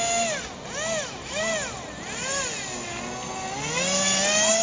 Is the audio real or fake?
real